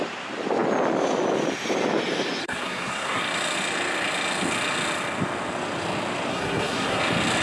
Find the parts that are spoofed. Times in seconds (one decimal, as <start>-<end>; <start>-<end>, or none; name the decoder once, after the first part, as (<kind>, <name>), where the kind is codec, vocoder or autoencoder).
2.4-3.2 (codec, SNAC); 6.3-7.0